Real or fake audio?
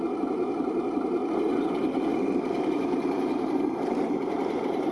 fake